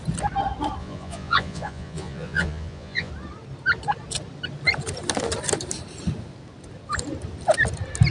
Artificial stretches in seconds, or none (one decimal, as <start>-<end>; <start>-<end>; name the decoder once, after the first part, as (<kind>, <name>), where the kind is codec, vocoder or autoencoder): 0.8-3.1 (vocoder, Vocos)